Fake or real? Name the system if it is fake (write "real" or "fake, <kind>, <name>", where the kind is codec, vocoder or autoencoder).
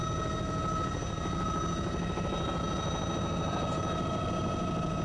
real